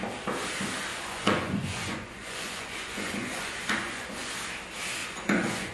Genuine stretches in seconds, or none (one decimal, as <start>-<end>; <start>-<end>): 0.0-0.9; 4.3-5.0

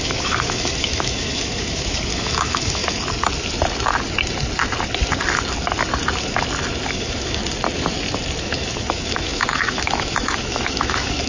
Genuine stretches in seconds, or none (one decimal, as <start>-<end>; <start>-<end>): 2.8-6.9; 7.4-8.4

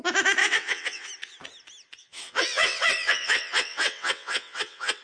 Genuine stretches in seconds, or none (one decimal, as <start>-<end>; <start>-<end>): 0.0-0.4; 1.1-2.0

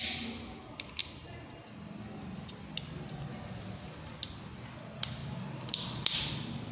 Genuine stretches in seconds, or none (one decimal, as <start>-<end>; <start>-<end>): 0.0-5.2; 6.3-6.7

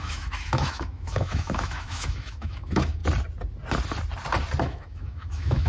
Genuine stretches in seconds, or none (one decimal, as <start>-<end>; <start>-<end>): 3.0-4.6

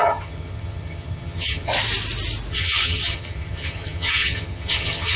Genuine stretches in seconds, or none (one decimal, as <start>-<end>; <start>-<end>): 1.7-2.5

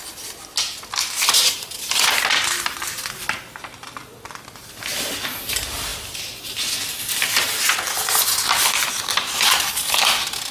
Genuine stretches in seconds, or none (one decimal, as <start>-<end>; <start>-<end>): 0.0-10.5